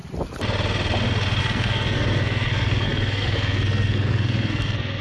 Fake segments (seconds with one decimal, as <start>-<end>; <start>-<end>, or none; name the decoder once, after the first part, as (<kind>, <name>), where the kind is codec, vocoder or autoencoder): 1.4-5.0 (codec, SNAC)